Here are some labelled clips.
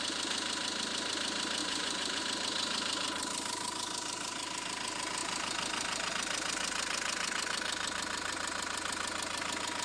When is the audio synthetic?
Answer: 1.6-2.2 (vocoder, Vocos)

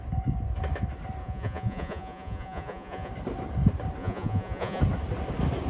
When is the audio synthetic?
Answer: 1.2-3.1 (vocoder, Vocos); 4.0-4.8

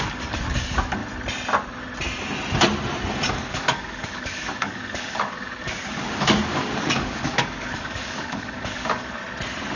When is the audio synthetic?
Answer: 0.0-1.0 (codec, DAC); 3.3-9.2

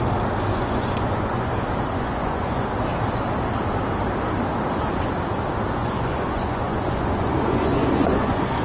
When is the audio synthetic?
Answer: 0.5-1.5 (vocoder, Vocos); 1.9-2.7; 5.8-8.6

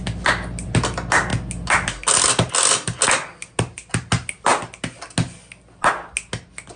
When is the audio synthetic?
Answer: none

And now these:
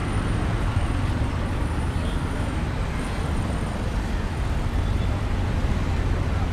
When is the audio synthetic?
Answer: none

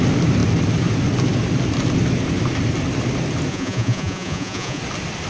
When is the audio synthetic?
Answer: 3.5-4.8 (vocoder, Vocos)

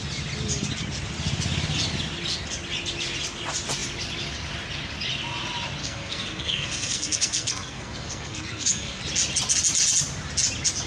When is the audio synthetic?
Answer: 5.8-9.0 (codec, SNAC)